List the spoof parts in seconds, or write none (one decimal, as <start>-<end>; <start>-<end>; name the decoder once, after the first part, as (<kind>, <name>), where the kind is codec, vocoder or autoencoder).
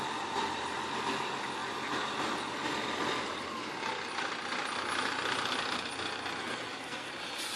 6.4-7.1 (codec, SNAC)